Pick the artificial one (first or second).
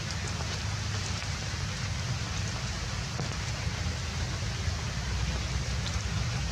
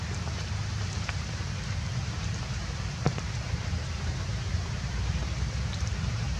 second